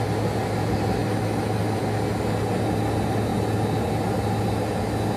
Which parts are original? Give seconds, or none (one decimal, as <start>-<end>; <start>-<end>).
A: 0.0-5.2